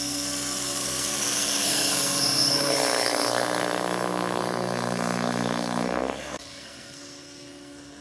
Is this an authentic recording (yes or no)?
no